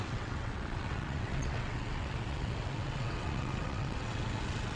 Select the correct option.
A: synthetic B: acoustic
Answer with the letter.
A